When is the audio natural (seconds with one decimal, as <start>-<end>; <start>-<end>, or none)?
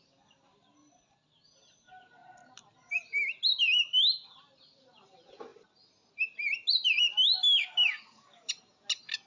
0.0-7.4; 8.5-9.3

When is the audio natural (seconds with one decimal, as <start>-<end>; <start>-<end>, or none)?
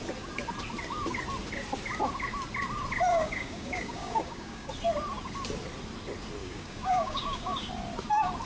0.0-3.1; 4.7-6.4; 7.7-8.5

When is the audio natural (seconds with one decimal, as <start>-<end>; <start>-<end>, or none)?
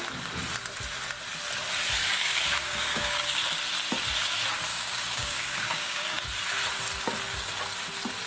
0.0-2.0; 3.4-4.7; 6.2-8.3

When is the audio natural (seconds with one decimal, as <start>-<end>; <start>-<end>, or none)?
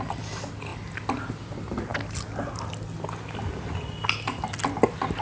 0.0-5.2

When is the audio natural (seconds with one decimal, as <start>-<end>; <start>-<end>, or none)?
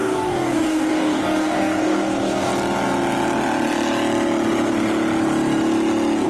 2.5-6.3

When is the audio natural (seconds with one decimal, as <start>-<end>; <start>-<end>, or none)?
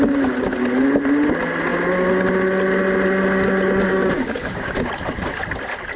0.0-3.9; 4.9-6.0